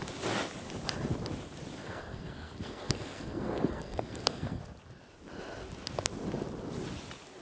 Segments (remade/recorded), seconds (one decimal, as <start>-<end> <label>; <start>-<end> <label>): 0.0-1.8 recorded; 1.8-4.6 remade; 4.6-7.4 recorded